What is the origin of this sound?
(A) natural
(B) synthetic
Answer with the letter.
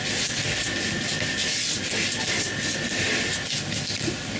A